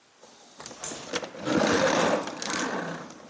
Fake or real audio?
real